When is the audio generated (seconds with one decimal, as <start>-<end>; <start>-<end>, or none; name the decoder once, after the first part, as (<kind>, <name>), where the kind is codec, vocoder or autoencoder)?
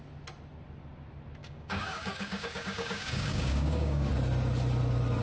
1.4-4.1 (codec, DAC)